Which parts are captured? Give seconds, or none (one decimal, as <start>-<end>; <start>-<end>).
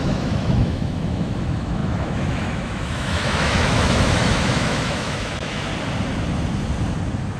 5.7-7.4